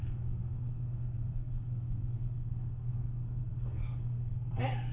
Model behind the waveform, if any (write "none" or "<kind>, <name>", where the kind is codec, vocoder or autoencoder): codec, SNAC